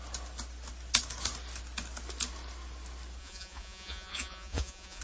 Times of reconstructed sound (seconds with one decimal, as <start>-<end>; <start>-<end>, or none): 3.2-5.0